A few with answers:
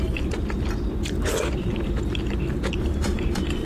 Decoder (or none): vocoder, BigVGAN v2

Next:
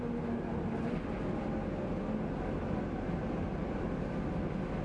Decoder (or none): none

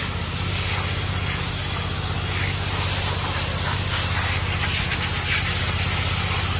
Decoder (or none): none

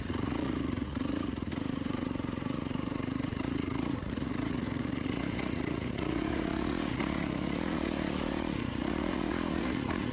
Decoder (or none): vocoder, Vocos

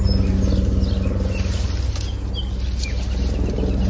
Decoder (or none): none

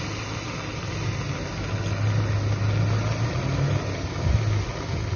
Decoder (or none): none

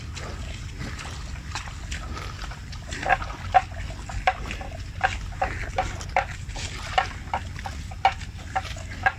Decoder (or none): none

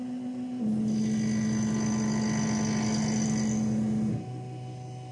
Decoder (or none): none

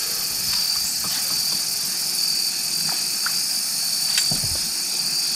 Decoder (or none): none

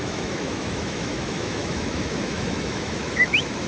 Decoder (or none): autoencoder, DAC-VAE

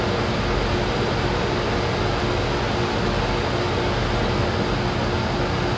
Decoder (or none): none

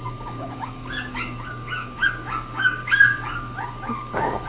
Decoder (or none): codec, DAC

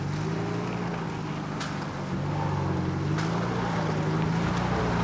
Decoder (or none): none